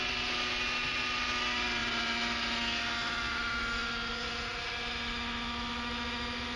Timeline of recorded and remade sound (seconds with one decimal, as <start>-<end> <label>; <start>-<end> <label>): 0.0-6.6 recorded

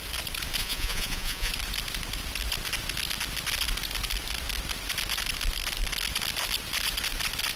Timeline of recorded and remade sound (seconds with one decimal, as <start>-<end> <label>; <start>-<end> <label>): 0.0-0.6 recorded; 0.6-1.5 remade; 1.5-7.6 recorded